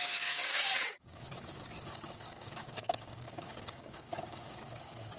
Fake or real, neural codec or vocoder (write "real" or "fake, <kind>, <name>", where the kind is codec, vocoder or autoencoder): fake, codec, DAC